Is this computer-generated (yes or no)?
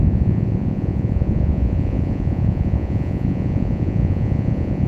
yes